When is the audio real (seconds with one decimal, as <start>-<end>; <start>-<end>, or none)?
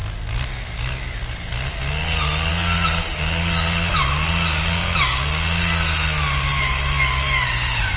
0.0-8.0